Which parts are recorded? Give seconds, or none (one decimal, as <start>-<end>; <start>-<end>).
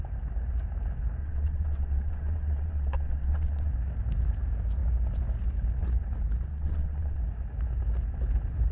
0.0-1.2; 3.7-6.5; 7.2-8.7